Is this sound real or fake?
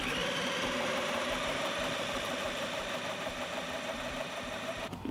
fake